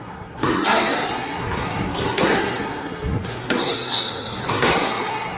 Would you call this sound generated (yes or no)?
yes